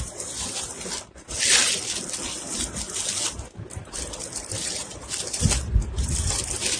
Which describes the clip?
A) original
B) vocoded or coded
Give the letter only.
A